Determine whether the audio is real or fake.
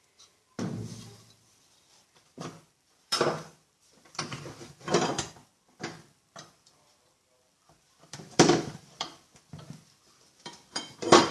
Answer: fake